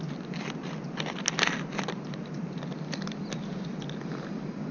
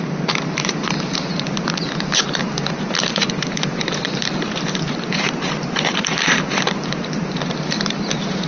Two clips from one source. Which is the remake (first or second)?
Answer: second